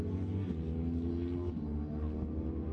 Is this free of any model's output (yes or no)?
yes